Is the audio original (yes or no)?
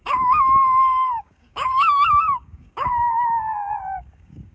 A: no